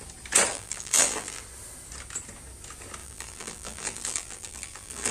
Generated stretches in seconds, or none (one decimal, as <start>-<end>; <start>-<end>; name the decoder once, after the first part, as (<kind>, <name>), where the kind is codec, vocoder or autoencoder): 0.5-1.4 (vocoder, BigVGAN v2); 3.0-5.1